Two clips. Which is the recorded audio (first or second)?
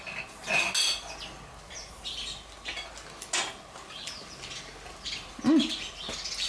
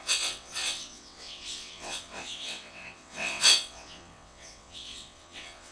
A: first